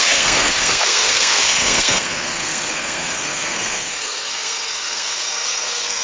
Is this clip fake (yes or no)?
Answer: yes